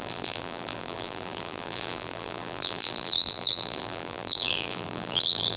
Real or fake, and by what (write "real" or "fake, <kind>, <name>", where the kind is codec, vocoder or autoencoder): fake, vocoder, BigVGAN v2